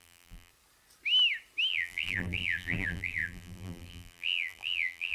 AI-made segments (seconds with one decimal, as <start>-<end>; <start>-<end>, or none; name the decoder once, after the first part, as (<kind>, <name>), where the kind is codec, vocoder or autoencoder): 0.0-0.5 (vocoder, BigVGAN v2); 1.7-5.1